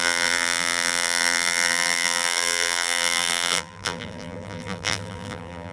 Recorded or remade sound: remade